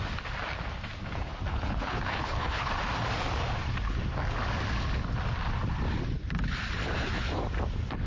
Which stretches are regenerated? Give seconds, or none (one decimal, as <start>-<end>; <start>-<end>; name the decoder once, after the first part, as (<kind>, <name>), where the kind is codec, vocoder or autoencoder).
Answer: 1.5-2.7 (codec, HILCodec)